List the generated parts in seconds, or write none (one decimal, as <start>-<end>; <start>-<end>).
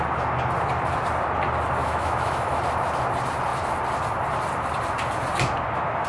1.8-2.6